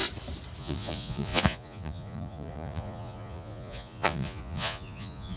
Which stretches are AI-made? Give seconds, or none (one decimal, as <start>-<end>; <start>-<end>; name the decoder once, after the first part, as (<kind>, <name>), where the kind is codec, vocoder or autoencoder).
0.6-5.4 (vocoder, Vocos)

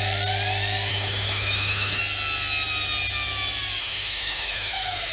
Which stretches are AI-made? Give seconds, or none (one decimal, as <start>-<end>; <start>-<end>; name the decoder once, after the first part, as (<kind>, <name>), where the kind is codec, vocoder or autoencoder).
0.9-2.0 (autoencoder, DAC-VAE); 3.8-5.1

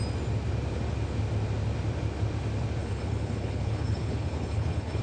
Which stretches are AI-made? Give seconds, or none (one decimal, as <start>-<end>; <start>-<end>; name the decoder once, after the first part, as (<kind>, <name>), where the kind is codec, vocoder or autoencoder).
2.8-5.0 (codec, HILCodec)